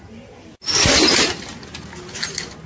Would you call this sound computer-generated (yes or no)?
no